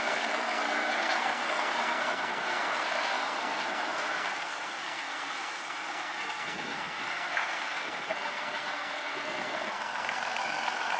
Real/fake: fake